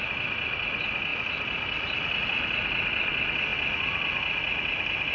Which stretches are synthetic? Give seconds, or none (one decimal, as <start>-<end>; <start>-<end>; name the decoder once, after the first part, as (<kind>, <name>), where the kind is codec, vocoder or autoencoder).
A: none